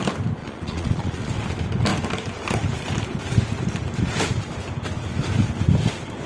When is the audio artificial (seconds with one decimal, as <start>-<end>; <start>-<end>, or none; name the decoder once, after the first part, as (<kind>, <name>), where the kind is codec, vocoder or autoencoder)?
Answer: 0.4-1.3 (vocoder, Vocos)